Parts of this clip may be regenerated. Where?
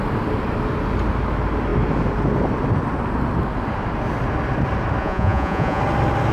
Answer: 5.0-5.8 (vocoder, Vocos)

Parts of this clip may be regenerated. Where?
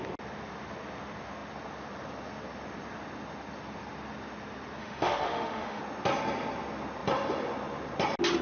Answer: 4.8-5.8 (autoencoder, DAC-VAE)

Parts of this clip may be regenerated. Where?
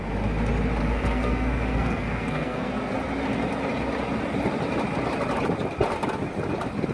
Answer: 0.8-2.7 (codec, SNAC)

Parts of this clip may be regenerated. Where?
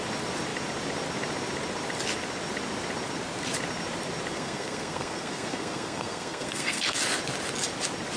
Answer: 4.3-7.0 (codec, SNAC)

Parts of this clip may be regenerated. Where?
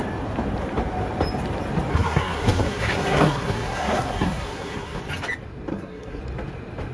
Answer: 1.9-5.0 (codec, SNAC); 5.7-6.2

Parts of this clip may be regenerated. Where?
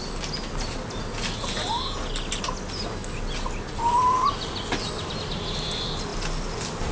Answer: none